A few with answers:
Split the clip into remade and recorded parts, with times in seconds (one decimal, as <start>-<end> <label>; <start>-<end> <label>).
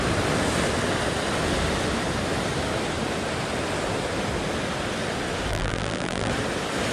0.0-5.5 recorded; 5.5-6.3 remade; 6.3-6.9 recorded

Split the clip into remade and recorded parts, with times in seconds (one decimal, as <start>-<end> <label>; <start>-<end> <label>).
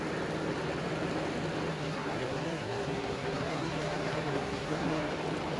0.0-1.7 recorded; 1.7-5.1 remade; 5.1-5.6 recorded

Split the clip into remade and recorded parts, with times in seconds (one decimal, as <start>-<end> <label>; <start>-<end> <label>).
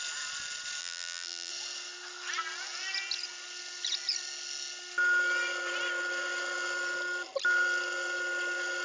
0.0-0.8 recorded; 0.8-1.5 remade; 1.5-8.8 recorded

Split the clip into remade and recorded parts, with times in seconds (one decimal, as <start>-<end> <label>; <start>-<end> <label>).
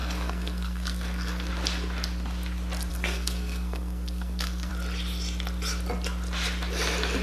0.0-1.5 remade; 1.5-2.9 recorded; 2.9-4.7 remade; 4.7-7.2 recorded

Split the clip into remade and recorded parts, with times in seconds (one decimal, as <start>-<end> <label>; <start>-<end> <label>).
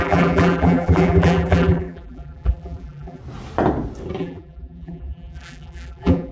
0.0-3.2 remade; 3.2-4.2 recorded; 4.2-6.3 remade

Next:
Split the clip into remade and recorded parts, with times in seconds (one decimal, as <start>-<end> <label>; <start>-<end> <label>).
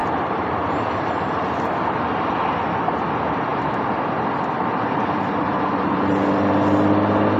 0.0-2.0 remade; 2.0-7.4 recorded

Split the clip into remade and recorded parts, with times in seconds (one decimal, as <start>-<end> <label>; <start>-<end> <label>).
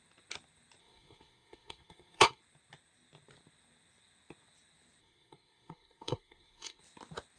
0.0-0.8 recorded; 0.8-2.4 remade; 2.4-5.0 recorded; 5.0-6.8 remade; 6.8-7.4 recorded